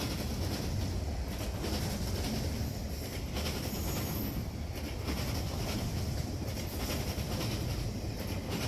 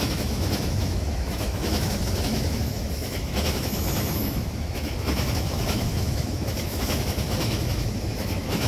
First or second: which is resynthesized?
second